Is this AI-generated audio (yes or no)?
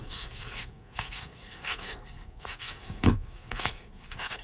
yes